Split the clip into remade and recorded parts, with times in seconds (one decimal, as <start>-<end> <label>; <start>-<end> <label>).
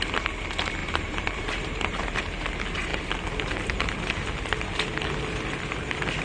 0.0-0.8 recorded; 0.8-2.2 remade; 2.2-6.2 recorded